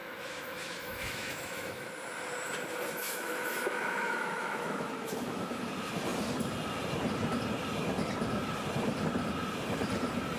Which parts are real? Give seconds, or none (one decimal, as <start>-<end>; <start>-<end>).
1.9-3.0; 5.6-10.4